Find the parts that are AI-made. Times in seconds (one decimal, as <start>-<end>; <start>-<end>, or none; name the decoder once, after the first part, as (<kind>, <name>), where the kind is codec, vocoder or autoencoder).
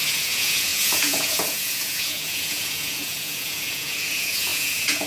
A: 0.0-5.1 (vocoder, Vocos)